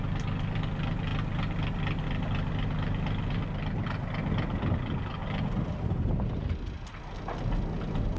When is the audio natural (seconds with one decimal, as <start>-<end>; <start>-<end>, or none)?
0.0-8.2